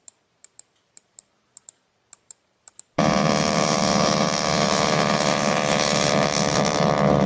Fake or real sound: fake